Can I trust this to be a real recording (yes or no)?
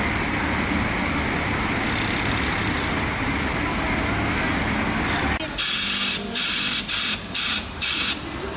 yes